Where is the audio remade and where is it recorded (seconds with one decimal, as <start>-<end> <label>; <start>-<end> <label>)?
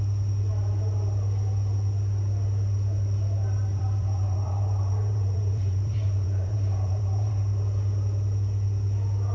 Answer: 0.0-3.7 recorded; 3.7-7.3 remade; 7.3-9.3 recorded